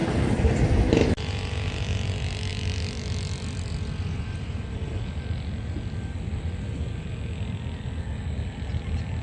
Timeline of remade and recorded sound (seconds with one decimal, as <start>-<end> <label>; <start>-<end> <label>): 0.0-9.2 recorded